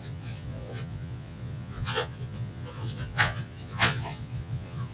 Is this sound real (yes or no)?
no